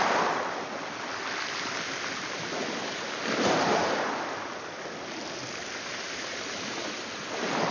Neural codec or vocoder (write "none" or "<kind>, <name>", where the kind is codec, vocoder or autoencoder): none